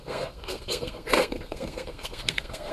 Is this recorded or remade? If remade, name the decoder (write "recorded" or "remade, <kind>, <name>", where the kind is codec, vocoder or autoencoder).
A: remade, codec, SNAC